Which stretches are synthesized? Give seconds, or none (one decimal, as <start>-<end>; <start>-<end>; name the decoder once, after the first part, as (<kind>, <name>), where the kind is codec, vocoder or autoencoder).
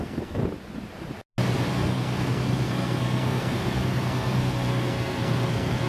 0.0-0.4 (codec, SNAC); 1.7-5.9